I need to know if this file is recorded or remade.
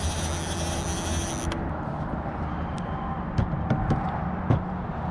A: recorded